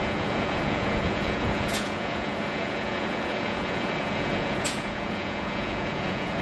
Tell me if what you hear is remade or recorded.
remade